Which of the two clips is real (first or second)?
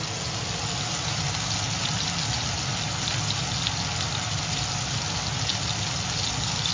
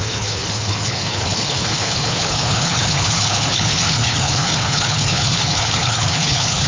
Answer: first